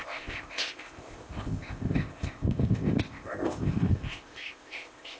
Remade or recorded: remade